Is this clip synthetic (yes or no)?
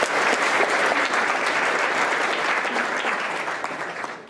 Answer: yes